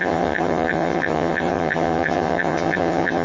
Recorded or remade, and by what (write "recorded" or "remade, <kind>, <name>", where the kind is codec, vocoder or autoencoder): remade, vocoder, HiFi-GAN